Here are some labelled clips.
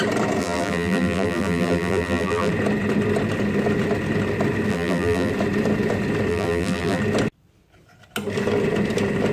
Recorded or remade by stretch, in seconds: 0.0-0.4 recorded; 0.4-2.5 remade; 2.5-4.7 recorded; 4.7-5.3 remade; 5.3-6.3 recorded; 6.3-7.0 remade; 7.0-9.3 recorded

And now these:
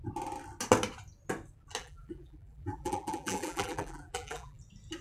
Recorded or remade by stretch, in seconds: 0.0-1.8 recorded; 1.8-4.6 remade; 4.6-5.0 recorded